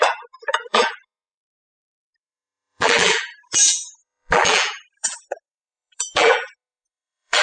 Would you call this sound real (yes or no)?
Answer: no